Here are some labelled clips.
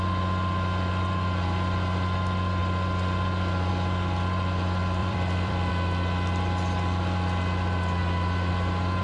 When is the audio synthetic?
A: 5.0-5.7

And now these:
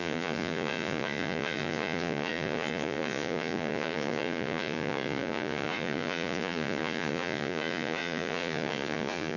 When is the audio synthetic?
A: 0.0-9.4

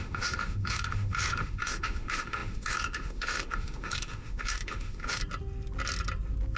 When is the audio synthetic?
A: 0.0-5.2

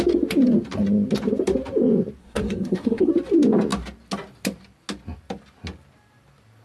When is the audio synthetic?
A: 2.2-3.1

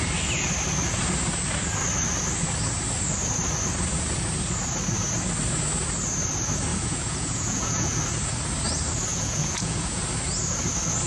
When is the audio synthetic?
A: 6.7-8.0; 9.1-10.0

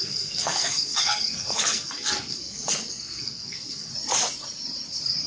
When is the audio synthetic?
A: 0.0-3.9